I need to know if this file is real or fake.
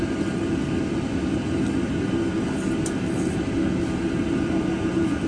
real